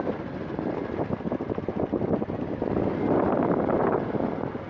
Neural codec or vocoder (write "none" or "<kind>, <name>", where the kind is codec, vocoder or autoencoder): none